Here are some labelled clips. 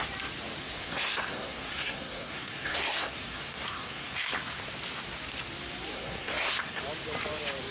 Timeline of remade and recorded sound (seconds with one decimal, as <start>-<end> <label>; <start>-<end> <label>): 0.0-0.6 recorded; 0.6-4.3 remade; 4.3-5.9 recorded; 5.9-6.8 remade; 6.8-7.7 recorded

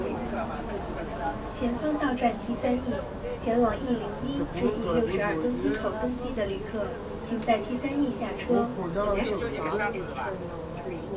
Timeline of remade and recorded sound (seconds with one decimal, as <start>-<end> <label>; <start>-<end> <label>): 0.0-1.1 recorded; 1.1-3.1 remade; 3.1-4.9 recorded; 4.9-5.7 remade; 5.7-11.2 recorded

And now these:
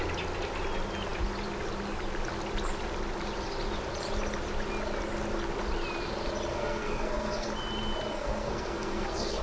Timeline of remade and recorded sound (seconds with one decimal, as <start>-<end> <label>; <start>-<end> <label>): 0.0-6.5 recorded; 6.5-7.5 remade; 7.5-8.1 recorded; 8.1-9.4 remade